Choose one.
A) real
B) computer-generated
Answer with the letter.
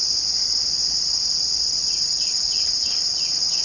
B